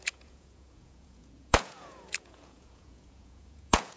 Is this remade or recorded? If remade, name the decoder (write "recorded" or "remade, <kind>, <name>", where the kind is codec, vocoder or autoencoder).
remade, vocoder, Vocos